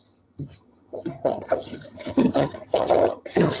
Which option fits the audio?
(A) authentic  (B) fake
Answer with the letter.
B